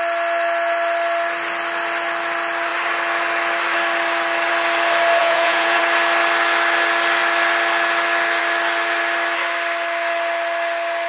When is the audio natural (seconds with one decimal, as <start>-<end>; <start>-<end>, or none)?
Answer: 0.0-5.2; 5.8-11.1